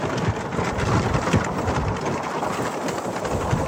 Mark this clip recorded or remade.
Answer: recorded